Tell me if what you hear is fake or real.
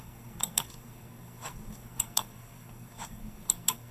fake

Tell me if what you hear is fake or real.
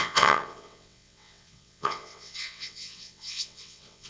fake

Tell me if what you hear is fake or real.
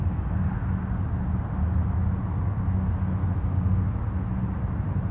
real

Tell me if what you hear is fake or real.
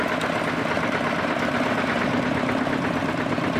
real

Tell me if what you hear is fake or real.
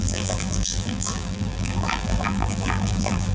fake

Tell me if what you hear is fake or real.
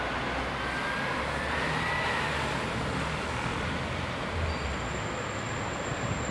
real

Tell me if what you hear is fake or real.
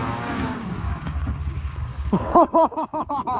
fake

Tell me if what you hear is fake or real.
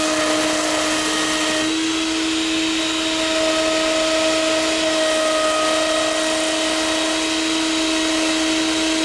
real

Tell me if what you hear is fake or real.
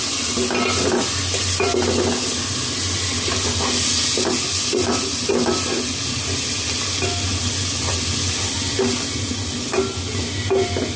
real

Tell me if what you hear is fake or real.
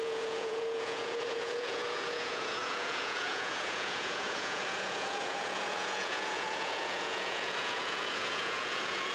fake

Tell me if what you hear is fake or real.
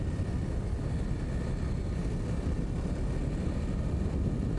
real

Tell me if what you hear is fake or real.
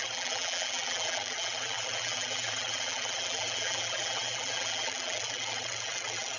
fake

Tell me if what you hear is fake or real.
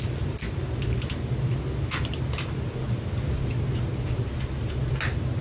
real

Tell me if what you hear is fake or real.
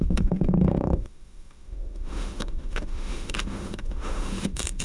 fake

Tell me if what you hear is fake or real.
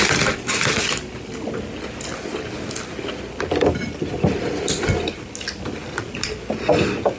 real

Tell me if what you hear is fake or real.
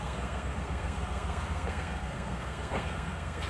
fake